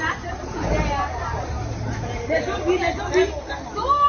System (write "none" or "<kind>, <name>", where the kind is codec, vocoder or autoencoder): none